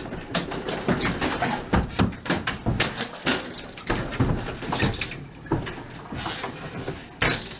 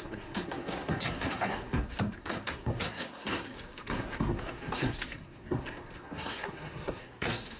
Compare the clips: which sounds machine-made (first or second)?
second